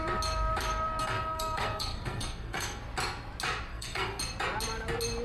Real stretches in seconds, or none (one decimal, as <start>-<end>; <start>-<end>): 0.0-1.0; 2.8-3.7; 4.2-5.2